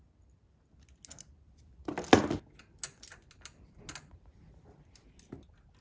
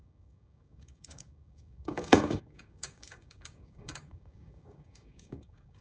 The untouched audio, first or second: first